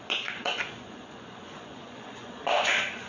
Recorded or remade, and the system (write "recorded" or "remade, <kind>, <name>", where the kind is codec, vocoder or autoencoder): remade, vocoder, Vocos